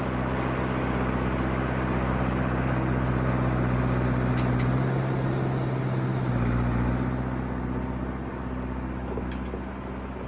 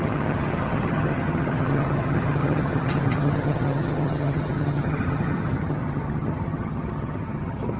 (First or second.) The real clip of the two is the first